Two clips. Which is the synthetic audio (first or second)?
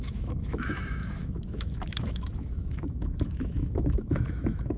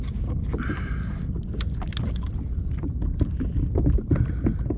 first